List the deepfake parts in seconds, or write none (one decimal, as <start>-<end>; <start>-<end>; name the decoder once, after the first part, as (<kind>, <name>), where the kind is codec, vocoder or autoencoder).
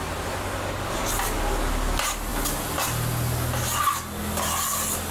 none